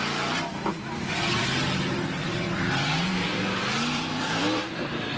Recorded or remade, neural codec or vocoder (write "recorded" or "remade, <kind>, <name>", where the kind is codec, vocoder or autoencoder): remade, vocoder, BigVGAN v2